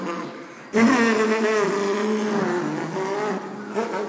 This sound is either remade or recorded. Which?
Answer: recorded